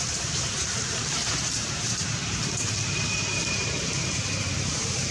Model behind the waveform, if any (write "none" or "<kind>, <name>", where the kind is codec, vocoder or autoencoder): vocoder, BigVGAN v2